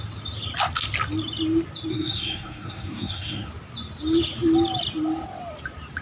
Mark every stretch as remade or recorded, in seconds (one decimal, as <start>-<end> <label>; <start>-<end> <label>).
0.0-1.9 recorded; 1.9-3.5 remade; 3.5-6.0 recorded